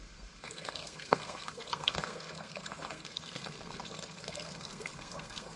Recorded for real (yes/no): no